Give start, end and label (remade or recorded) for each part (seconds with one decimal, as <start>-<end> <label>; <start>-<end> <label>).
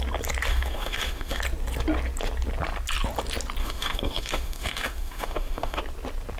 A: 0.0-0.5 recorded; 0.5-1.4 remade; 1.4-3.6 recorded; 3.6-5.8 remade; 5.8-6.4 recorded